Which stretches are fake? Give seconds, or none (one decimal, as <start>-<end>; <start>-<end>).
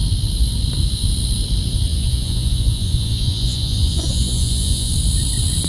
1.9-4.9